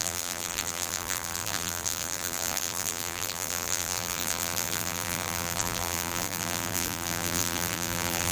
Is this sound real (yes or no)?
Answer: no